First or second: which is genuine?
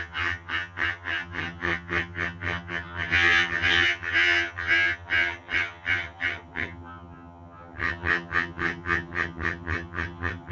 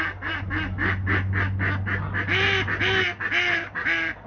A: second